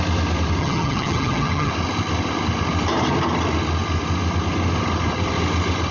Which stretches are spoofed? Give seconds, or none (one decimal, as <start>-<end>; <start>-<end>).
0.6-1.7

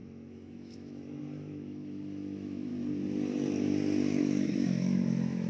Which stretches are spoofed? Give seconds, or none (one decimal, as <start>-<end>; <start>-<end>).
0.0-2.7; 4.2-5.5

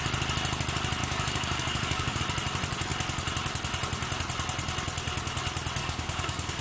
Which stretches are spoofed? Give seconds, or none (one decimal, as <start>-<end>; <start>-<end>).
1.0-2.2; 5.8-6.6

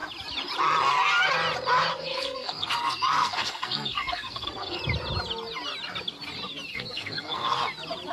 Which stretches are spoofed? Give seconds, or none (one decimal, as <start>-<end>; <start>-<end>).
1.9-4.8; 6.7-7.6

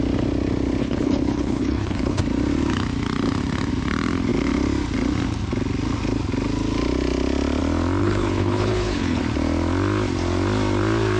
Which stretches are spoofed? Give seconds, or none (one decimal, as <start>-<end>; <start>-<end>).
0.8-2.2; 8.0-9.2

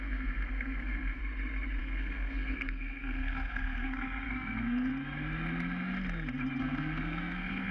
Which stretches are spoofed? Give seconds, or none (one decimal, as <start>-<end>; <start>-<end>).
0.0-1.2; 1.8-4.9; 6.6-7.7

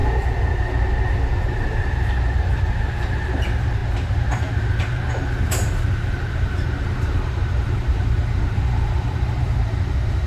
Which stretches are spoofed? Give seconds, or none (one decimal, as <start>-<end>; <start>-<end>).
1.4-10.3

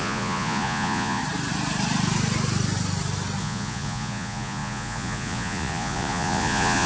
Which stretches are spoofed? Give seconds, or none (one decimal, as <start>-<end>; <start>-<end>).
0.0-1.2; 3.4-6.9